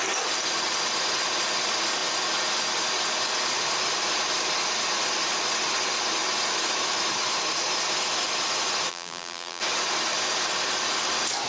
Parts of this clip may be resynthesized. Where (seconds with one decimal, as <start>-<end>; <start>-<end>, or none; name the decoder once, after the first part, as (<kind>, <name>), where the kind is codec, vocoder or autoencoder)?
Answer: 8.9-9.6 (vocoder, BigVGAN v2)

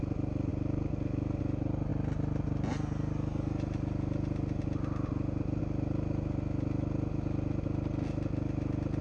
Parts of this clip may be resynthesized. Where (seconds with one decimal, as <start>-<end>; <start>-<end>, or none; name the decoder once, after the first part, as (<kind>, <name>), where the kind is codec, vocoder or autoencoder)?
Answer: none

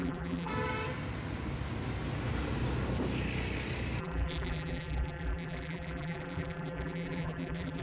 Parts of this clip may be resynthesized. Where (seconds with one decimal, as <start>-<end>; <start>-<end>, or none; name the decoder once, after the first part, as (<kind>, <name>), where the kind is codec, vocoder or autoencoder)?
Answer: 0.0-0.5 (vocoder, BigVGAN v2); 4.0-7.8

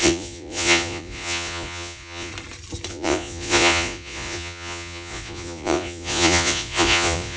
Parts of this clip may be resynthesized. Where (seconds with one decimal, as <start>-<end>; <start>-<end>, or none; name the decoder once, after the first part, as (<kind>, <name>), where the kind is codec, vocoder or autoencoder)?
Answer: 0.0-2.3 (vocoder, Vocos); 2.9-7.4

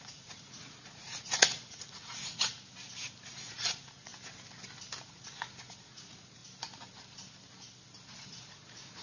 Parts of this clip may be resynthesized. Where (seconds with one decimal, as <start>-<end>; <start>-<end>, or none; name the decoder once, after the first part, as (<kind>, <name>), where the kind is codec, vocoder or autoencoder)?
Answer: 0.0-2.5 (vocoder, Vocos); 3.3-4.1; 5.1-6.4; 8.2-9.0